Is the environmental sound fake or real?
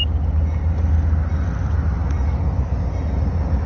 real